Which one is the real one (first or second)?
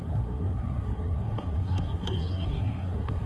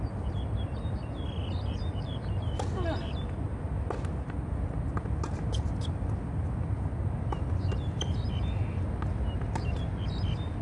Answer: second